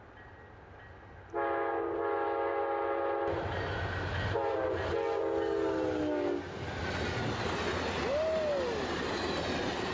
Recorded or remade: recorded